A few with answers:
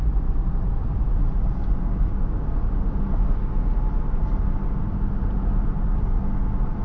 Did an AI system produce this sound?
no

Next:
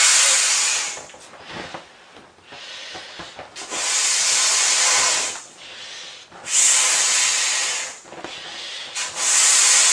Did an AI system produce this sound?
no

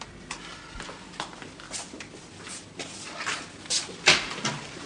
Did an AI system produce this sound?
no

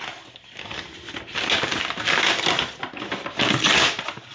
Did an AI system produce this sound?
no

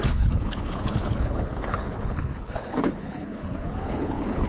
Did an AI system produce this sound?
yes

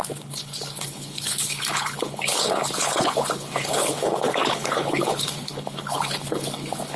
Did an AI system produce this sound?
yes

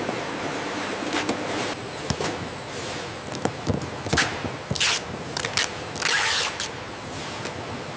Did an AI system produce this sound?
no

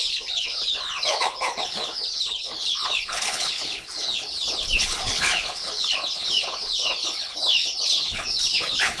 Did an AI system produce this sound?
yes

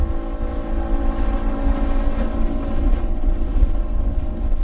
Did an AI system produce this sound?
no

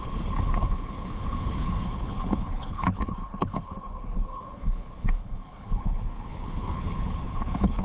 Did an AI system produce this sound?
yes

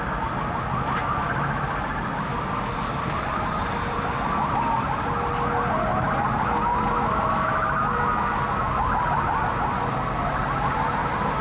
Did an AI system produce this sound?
no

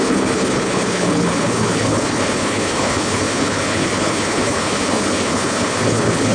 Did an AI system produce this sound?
yes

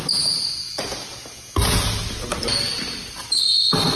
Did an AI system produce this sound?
no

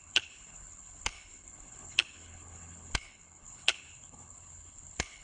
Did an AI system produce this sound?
yes